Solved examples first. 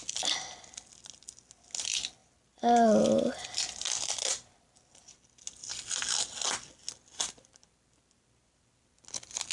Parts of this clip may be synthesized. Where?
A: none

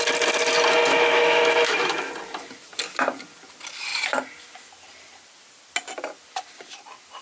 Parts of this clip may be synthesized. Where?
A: 0.9-2.1 (autoencoder, DAC-VAE)

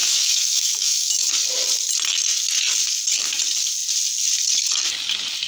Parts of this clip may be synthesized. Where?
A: 0.0-1.3 (autoencoder, DAC-VAE)